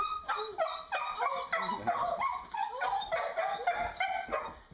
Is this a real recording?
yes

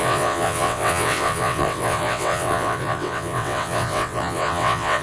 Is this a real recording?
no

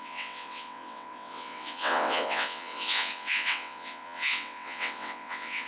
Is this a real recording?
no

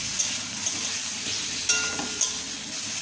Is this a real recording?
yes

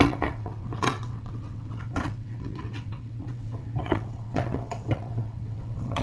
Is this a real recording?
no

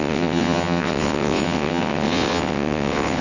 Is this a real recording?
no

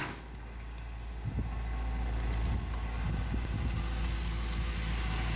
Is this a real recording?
yes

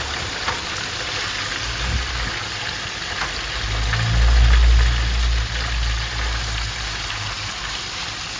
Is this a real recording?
yes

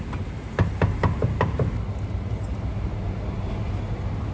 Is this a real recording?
yes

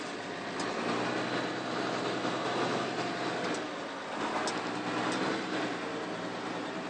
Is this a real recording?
yes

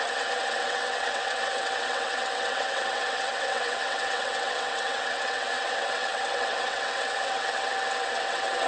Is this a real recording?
no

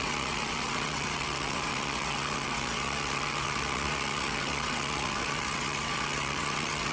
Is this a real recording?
no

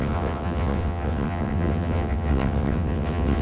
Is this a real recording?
no